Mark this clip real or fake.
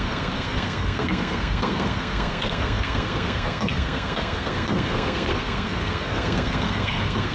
fake